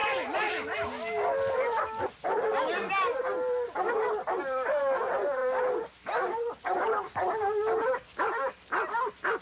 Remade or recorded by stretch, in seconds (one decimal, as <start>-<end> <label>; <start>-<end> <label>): 0.0-9.4 recorded